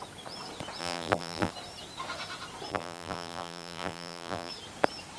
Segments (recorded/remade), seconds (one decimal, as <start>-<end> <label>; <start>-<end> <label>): 0.0-0.8 recorded; 0.8-1.5 remade; 1.5-2.7 recorded; 2.7-4.5 remade; 4.5-5.2 recorded